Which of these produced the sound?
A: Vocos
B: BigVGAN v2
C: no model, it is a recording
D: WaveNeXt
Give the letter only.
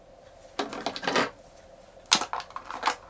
C